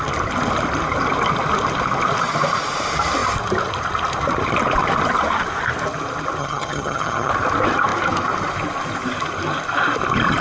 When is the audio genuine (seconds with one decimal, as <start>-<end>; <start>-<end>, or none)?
0.0-6.4; 7.3-10.4